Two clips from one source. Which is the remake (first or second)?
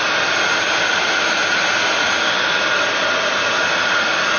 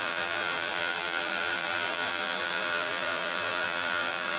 second